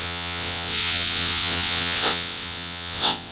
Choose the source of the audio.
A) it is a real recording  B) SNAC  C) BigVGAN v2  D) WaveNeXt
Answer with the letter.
D